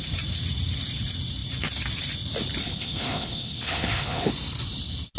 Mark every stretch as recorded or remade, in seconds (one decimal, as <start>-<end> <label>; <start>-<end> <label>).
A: 0.0-2.6 recorded; 2.6-4.3 remade; 4.3-5.2 recorded